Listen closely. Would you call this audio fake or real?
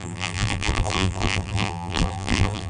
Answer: fake